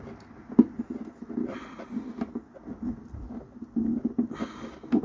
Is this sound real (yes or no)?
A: yes